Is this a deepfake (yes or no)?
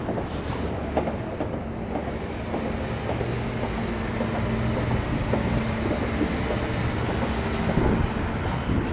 no